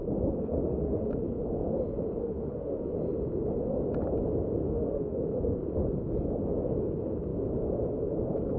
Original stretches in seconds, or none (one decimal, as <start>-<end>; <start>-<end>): 0.0-0.4; 1.0-2.2; 2.9-4.6; 5.2-8.6